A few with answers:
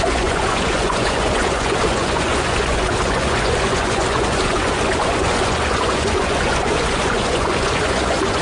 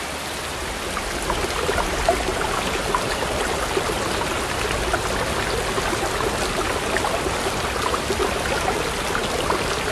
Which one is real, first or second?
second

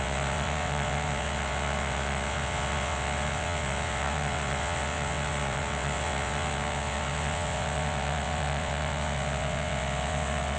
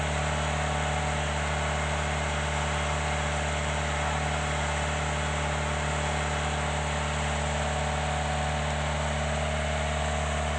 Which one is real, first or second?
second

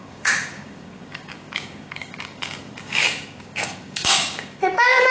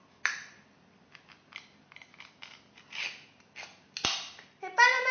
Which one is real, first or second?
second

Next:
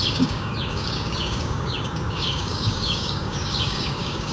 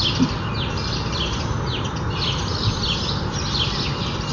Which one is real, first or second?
second